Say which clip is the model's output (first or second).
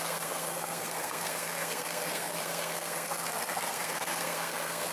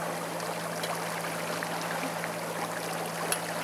first